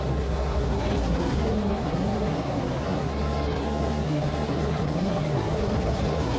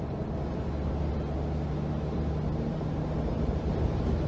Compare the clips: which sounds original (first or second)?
second